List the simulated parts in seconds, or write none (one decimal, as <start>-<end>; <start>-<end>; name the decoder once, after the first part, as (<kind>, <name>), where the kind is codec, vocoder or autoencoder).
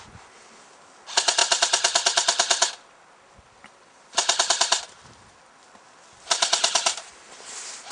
none